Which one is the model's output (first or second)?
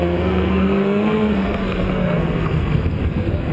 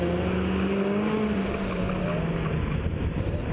first